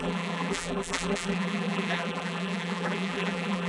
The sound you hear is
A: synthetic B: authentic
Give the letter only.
A